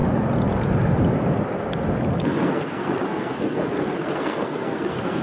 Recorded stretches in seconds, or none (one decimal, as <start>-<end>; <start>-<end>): 0.0-2.1